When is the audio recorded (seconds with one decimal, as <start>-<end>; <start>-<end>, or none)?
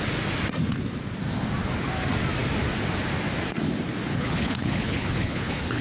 0.0-4.1